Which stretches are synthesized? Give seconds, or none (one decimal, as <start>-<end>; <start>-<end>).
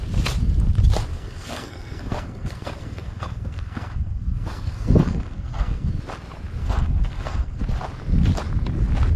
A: 1.1-6.0; 6.6-7.6